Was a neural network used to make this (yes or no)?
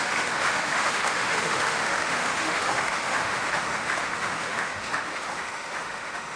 yes